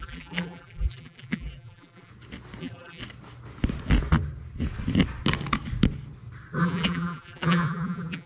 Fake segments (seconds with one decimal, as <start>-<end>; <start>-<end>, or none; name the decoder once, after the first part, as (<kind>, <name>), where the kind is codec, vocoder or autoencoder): 0.0-2.1 (vocoder, BigVGAN v2); 2.6-3.0; 6.6-8.3